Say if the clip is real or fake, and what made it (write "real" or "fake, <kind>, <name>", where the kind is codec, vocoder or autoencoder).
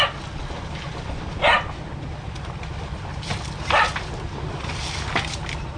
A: real